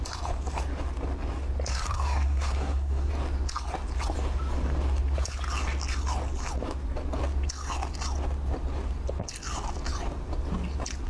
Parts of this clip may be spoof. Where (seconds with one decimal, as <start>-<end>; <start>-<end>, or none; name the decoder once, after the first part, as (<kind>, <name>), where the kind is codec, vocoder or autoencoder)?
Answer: 1.7-3.1 (codec, SNAC)